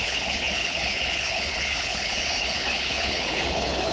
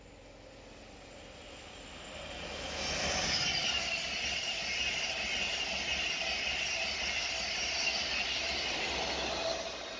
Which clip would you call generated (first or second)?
first